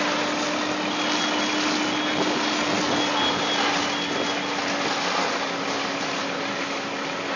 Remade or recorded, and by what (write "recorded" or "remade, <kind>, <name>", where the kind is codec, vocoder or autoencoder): recorded